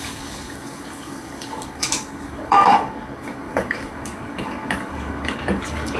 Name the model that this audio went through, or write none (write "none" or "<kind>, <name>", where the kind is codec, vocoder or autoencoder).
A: codec, DAC